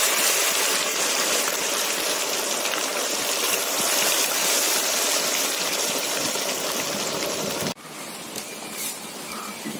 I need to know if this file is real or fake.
fake